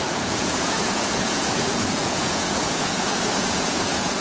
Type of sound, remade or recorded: remade